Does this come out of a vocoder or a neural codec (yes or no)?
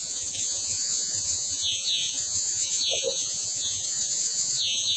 yes